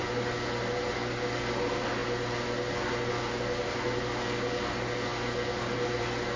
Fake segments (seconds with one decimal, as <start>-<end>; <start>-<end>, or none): none